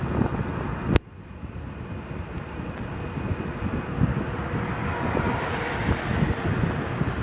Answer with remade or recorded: recorded